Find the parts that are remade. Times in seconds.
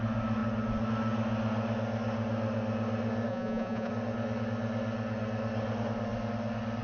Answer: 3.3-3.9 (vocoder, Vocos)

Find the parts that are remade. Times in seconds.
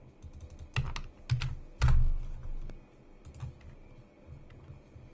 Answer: none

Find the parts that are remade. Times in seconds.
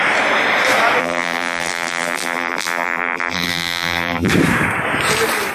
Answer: 1.0-4.3 (vocoder, BigVGAN v2)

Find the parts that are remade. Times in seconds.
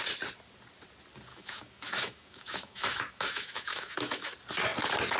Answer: 1.3-4.3 (autoencoder, DAC-VAE)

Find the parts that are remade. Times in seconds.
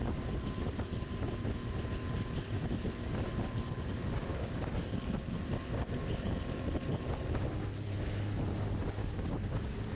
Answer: 4.3-5.0 (codec, DAC); 9.0-10.0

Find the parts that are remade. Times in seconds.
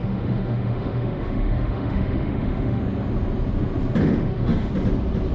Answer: 0.0-2.8 (autoencoder, DAC-VAE); 4.0-4.7